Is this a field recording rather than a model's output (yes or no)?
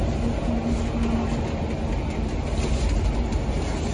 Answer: yes